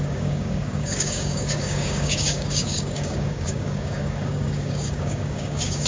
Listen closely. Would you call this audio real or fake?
fake